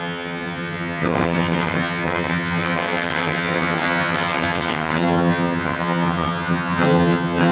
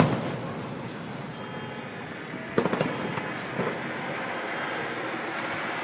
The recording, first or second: second